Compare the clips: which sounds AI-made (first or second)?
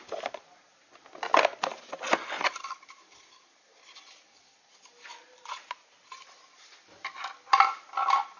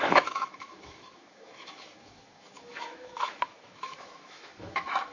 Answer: second